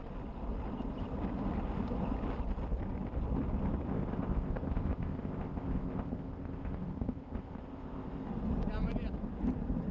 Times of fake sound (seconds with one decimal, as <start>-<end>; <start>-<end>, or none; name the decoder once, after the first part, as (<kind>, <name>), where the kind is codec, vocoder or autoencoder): 3.9-8.3 (codec, ZipCodec)

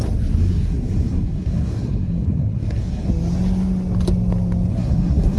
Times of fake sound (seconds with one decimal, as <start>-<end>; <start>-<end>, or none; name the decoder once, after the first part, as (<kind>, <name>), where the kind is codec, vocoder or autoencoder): 0.4-3.1 (codec, SNAC); 4.7-5.4